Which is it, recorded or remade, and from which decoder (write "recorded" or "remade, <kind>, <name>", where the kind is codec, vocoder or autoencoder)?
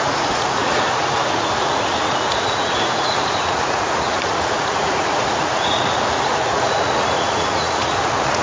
remade, vocoder, Vocos